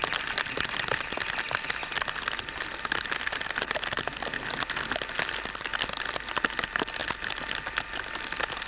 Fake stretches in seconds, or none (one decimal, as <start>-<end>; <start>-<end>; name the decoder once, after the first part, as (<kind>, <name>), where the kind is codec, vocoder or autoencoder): none